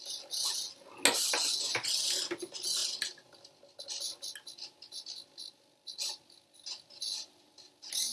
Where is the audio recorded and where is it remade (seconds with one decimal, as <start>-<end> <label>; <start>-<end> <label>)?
0.0-8.1 recorded